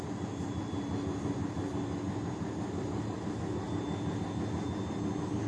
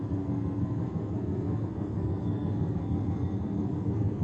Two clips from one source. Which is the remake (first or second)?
second